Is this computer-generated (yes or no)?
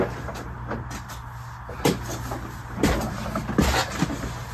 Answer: no